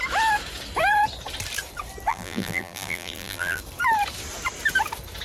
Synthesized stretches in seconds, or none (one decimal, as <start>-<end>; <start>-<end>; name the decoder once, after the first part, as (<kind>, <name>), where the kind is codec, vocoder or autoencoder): 2.1-3.6 (vocoder, BigVGAN v2)